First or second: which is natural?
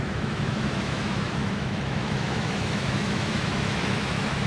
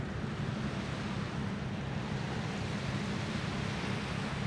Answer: second